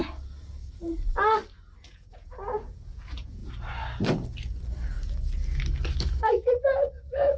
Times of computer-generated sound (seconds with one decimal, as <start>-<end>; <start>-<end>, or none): 1.9-3.4; 6.3-7.4